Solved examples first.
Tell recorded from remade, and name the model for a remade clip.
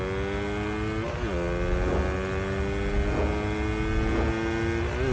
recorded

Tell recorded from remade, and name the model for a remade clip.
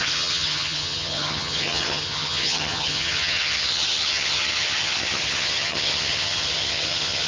remade, vocoder, HiFi-GAN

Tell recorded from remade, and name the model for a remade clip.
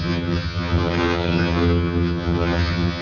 remade, vocoder, HiFi-GAN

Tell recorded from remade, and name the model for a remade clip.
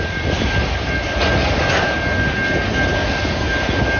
recorded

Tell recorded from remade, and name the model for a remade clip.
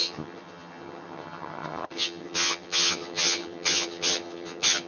remade, vocoder, HiFi-GAN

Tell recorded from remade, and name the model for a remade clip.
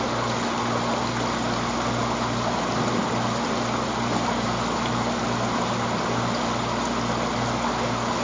recorded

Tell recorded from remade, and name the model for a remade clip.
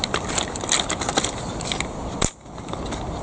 recorded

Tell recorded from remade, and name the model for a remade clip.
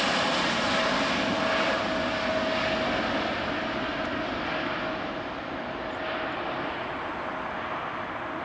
recorded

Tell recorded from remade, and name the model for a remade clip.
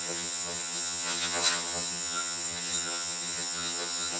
remade, vocoder, HiFi-GAN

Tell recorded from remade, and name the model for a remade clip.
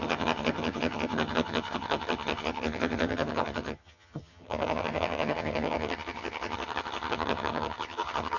remade, vocoder, HiFi-GAN